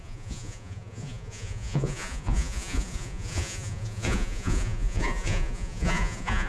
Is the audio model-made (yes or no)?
yes